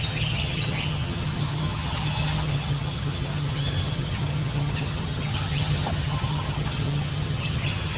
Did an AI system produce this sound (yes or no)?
yes